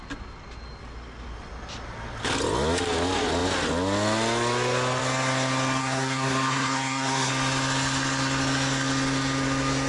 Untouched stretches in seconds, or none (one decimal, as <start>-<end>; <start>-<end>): 0.0-5.8; 7.3-9.9